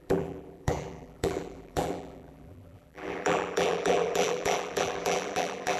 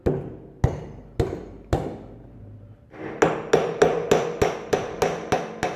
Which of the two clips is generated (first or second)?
first